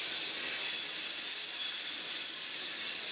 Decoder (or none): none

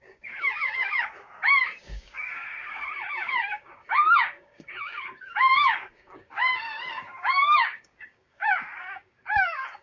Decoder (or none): codec, DAC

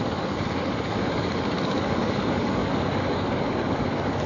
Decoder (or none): codec, DAC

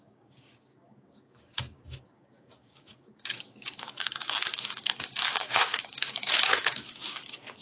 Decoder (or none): codec, DAC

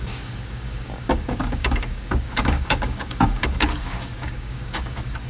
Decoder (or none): codec, DAC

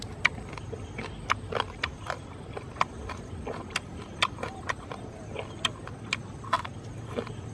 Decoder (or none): none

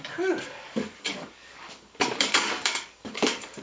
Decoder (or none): codec, DAC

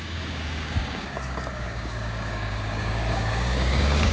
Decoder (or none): codec, DAC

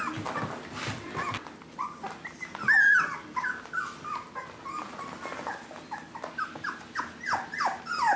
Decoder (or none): none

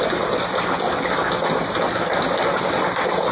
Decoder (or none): none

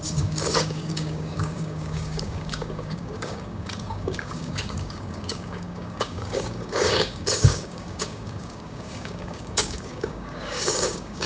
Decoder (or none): codec, DAC